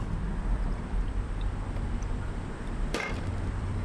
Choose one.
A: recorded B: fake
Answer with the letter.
B